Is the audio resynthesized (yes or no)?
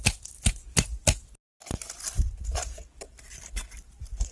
no